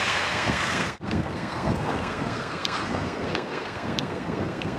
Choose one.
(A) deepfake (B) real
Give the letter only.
A